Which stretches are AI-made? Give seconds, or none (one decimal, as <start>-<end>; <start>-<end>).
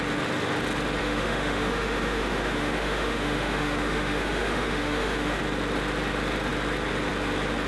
1.0-5.4